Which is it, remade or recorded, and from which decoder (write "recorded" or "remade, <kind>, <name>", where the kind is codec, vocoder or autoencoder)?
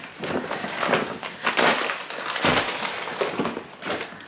recorded